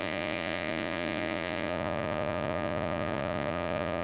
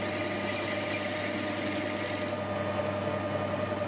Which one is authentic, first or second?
second